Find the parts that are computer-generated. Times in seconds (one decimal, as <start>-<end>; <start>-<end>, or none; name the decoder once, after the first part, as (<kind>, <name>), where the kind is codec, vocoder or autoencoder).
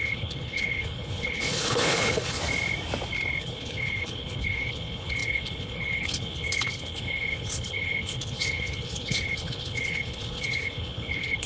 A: 0.0-2.4 (codec, HILCodec); 3.4-11.5